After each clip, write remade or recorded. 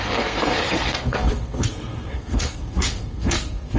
remade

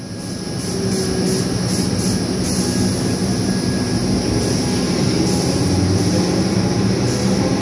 recorded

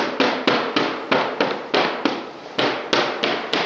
recorded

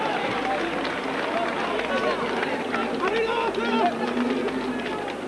recorded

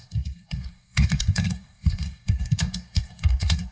remade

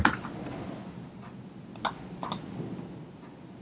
recorded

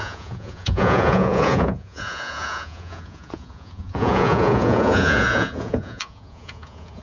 remade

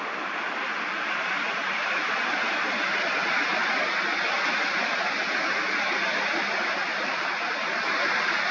recorded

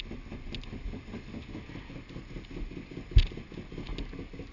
recorded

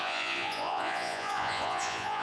remade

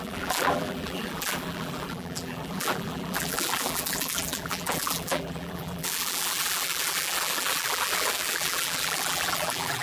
remade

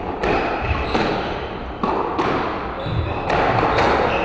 recorded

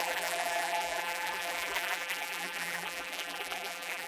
remade